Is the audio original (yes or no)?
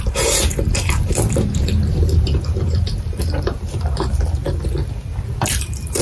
no